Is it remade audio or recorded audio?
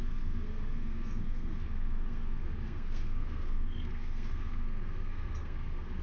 remade